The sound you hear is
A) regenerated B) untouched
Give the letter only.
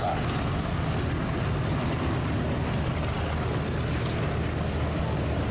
B